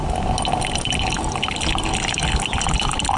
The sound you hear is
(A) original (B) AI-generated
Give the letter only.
A